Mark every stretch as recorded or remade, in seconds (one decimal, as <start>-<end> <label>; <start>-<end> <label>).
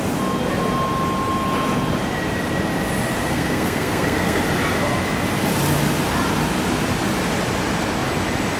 0.0-3.2 recorded; 3.2-4.4 remade; 4.4-8.6 recorded